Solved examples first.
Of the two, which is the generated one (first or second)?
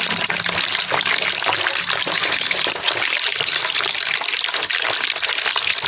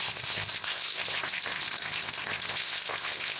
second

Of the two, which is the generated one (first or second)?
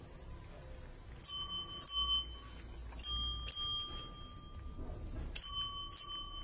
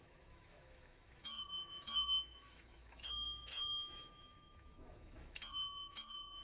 second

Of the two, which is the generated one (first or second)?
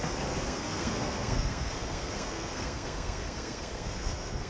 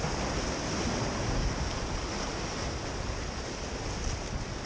first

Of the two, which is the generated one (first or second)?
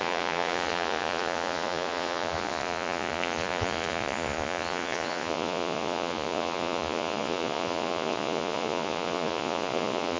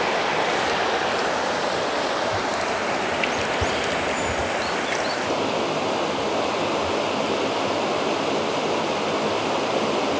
first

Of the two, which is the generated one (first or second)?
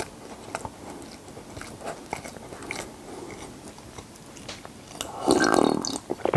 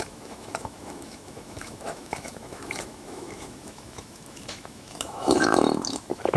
second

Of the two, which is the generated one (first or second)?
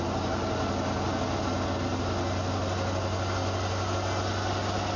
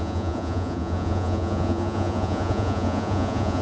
second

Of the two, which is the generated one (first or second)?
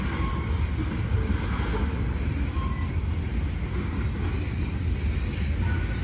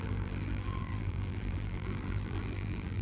second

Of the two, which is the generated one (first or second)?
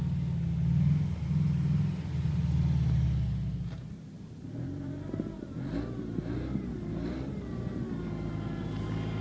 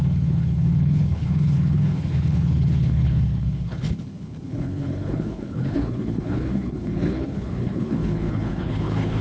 second